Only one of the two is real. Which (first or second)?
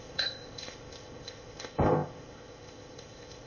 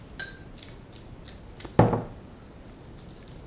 second